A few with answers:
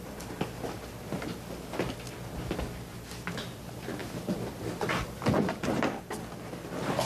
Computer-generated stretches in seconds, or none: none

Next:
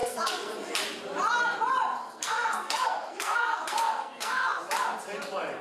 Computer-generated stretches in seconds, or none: 0.0-0.8; 2.0-4.6

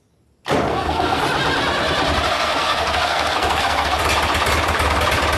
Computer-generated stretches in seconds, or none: 0.7-1.2; 2.3-4.0